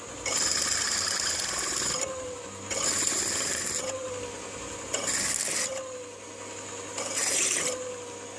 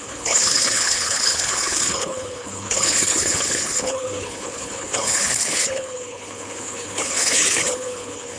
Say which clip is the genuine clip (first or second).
first